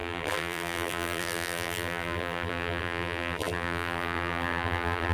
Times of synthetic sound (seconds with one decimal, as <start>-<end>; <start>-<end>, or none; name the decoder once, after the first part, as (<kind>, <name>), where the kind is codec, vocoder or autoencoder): 0.0-5.1 (vocoder, BigVGAN v2)